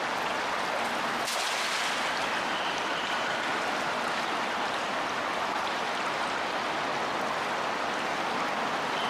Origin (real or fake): real